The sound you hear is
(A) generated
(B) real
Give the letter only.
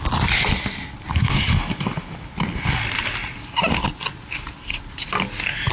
B